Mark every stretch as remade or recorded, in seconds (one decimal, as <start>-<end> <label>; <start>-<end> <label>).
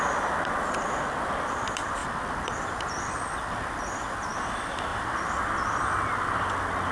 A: 0.0-2.0 recorded; 2.0-4.2 remade; 4.2-4.9 recorded; 4.9-5.4 remade; 5.4-6.9 recorded